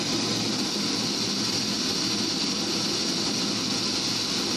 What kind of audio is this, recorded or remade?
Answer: recorded